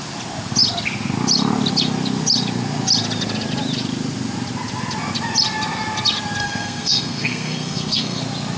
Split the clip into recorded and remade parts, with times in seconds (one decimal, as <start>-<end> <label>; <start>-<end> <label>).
0.0-6.4 recorded; 6.4-8.2 remade; 8.2-8.6 recorded